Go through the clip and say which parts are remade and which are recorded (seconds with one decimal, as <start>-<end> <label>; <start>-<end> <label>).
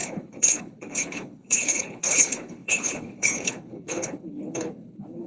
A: 0.0-5.3 remade